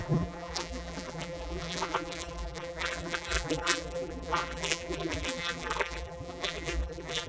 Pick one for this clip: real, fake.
fake